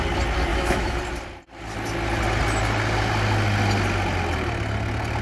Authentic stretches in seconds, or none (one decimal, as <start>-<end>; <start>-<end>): 0.0-0.5; 1.0-5.2